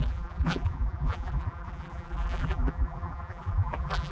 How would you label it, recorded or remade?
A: remade